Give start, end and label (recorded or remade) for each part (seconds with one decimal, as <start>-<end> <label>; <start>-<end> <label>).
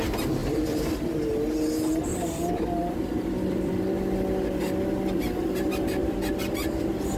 0.0-0.4 recorded; 0.4-1.0 remade; 1.0-2.1 recorded; 2.1-3.7 remade; 3.7-6.0 recorded; 6.0-6.7 remade; 6.7-7.2 recorded